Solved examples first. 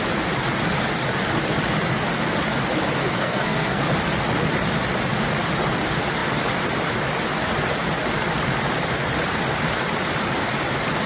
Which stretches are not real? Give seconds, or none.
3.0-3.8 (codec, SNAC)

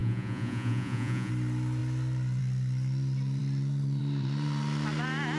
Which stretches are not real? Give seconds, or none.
0.0-1.3 (vocoder, Vocos)

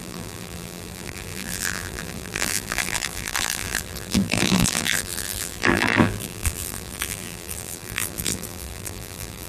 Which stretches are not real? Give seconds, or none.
0.0-9.5 (vocoder, BigVGAN v2)